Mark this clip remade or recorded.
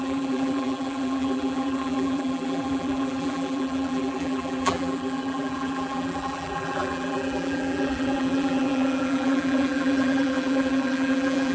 remade